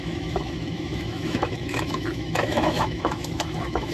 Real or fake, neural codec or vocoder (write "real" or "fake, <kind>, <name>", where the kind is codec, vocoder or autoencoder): fake, autoencoder, DAC-VAE